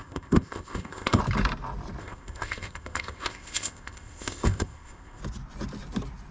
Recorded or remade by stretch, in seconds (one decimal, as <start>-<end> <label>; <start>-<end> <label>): 0.0-1.2 remade; 1.2-2.0 recorded; 2.0-5.2 remade; 5.2-6.3 recorded

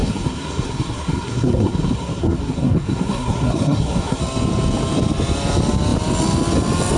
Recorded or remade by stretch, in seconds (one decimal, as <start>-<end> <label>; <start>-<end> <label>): 0.0-4.2 remade; 4.2-7.0 recorded

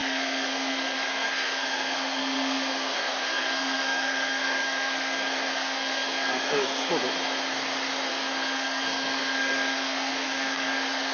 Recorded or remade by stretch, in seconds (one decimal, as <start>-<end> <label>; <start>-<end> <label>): 0.0-6.9 remade; 6.9-8.1 recorded; 8.1-11.1 remade

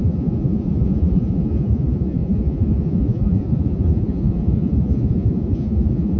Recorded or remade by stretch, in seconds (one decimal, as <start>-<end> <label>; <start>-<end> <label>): 0.0-6.2 remade

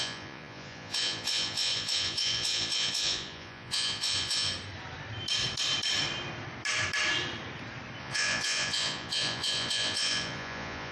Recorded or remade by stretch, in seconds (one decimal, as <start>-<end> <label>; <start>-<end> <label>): 0.0-4.5 remade; 4.5-8.0 recorded; 8.0-10.9 remade

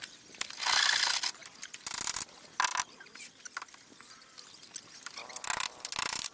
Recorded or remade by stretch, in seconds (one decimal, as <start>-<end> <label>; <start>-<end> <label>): 0.0-6.3 recorded

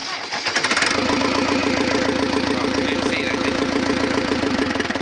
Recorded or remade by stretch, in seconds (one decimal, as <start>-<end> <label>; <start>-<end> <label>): 0.0-5.0 recorded